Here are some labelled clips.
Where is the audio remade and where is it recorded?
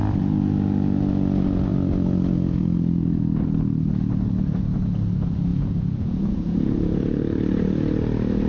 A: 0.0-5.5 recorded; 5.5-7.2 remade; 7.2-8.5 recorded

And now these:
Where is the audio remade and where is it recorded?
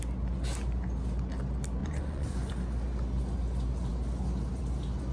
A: 0.0-1.8 recorded; 1.8-2.5 remade; 2.5-5.1 recorded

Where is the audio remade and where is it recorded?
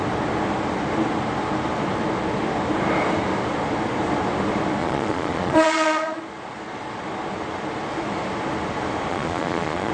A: 0.0-4.8 recorded; 4.8-6.2 remade; 6.2-9.1 recorded; 9.1-9.9 remade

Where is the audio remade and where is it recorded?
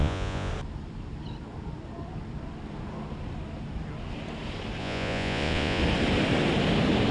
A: 0.0-0.5 remade; 0.5-4.8 recorded; 4.8-5.8 remade; 5.8-7.1 recorded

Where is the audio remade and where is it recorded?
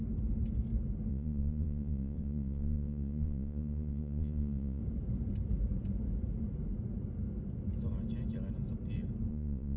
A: 0.0-1.1 recorded; 1.1-4.8 remade; 4.8-9.3 recorded; 9.3-9.8 remade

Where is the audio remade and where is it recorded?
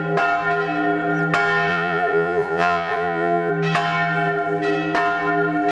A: 0.0-1.7 recorded; 1.7-3.5 remade; 3.5-5.7 recorded